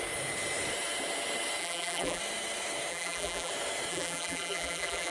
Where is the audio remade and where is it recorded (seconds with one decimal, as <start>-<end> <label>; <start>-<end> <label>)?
0.0-1.6 recorded; 1.6-2.2 remade; 2.2-2.9 recorded; 2.9-3.5 remade; 3.5-3.9 recorded; 3.9-5.1 remade